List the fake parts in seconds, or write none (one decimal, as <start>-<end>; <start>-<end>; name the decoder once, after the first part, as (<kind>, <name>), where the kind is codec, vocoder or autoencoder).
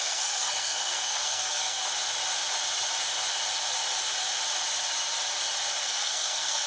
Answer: 0.0-1.8 (codec, SNAC); 5.8-6.7